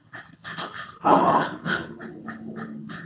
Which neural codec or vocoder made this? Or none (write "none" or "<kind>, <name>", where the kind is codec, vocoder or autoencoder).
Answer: codec, HILCodec